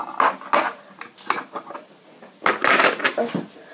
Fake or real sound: real